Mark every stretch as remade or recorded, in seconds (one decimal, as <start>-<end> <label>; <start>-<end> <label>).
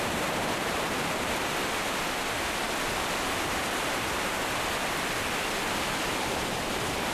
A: 0.0-1.8 remade; 1.8-6.1 recorded; 6.1-7.1 remade